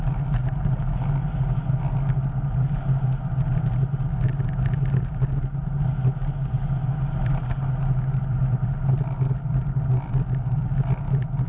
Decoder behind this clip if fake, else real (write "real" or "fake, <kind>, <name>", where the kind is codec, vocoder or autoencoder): real